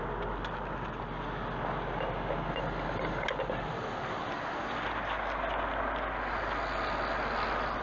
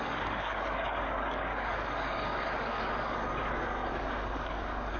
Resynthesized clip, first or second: second